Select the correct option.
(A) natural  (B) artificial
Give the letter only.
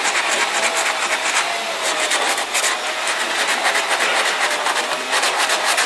A